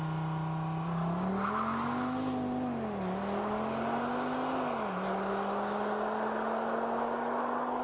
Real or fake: real